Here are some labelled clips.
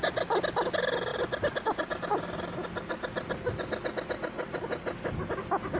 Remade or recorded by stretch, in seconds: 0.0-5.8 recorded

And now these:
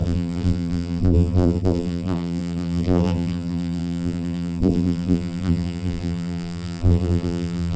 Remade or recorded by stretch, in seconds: 0.0-7.8 remade

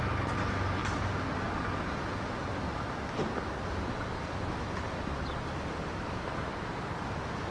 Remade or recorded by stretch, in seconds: 0.0-7.5 recorded

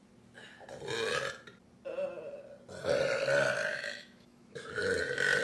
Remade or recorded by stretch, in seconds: 0.0-3.7 recorded; 3.7-4.8 remade; 4.8-5.4 recorded

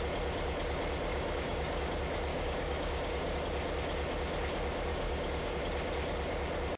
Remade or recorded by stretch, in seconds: 0.0-1.1 recorded; 1.1-1.9 remade; 1.9-2.3 recorded; 2.3-3.4 remade; 3.4-4.9 recorded; 4.9-5.6 remade; 5.6-6.8 recorded

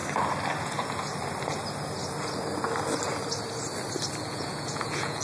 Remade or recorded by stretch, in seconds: 0.0-0.6 recorded; 0.6-1.1 remade; 1.1-4.2 recorded; 4.2-5.2 remade

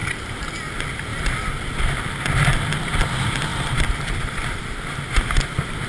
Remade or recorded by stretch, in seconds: 0.0-0.5 remade; 0.5-3.5 recorded; 3.5-4.6 remade; 4.6-5.9 recorded